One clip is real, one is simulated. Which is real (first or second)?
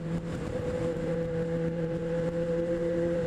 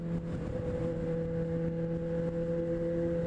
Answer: second